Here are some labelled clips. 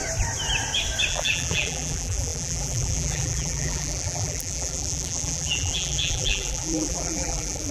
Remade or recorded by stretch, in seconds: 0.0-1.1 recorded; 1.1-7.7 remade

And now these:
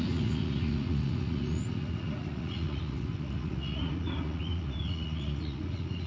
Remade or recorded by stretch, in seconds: 0.0-6.1 remade

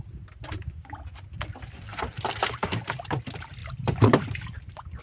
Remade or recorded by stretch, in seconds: 0.0-1.9 recorded; 1.9-3.0 remade; 3.0-3.6 recorded; 3.6-4.3 remade; 4.3-5.0 recorded